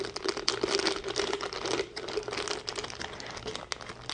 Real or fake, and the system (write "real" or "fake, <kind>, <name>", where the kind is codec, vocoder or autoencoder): real